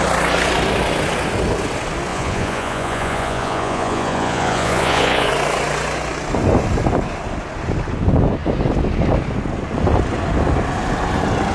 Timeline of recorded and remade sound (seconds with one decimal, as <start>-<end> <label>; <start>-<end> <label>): 0.0-2.1 recorded; 2.1-5.3 remade; 5.3-11.5 recorded